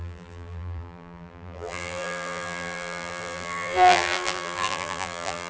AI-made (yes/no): yes